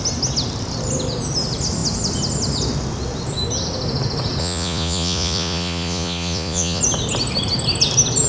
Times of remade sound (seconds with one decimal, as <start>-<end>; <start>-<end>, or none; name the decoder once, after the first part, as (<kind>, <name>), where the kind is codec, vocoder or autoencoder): 4.4-6.8 (vocoder, Vocos)